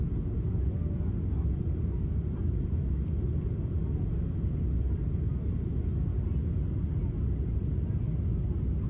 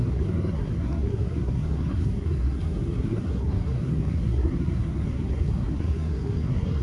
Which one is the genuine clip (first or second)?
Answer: first